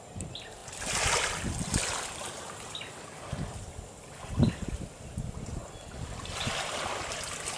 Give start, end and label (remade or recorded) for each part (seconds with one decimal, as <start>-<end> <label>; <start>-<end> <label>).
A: 0.0-7.6 recorded